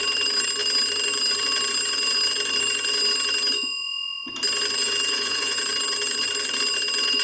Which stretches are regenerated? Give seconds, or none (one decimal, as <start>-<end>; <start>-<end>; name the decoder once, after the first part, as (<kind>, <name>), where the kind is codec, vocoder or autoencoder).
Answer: 4.8-5.6 (vocoder, Vocos)